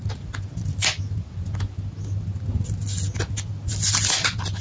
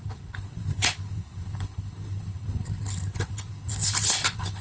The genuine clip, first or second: first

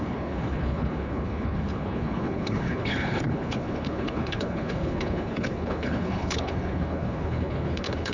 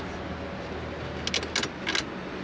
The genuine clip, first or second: second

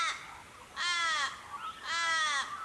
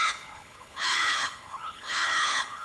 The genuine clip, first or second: first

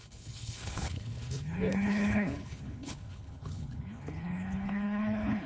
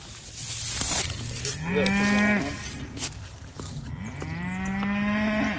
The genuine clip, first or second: second